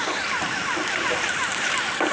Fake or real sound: real